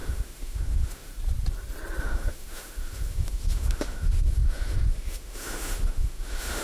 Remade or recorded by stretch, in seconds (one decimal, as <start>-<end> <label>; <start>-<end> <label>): 0.0-1.1 remade; 1.1-2.0 recorded; 2.0-6.6 remade